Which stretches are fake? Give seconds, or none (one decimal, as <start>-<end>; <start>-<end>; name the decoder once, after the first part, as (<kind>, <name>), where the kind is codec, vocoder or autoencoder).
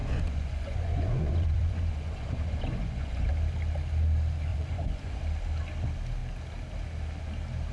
0.0-3.3 (vocoder, Vocos); 4.5-5.2